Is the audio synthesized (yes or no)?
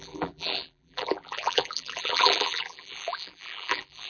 yes